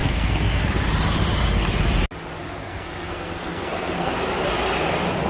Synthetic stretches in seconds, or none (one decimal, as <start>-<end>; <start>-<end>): 0.0-0.6; 2.6-4.1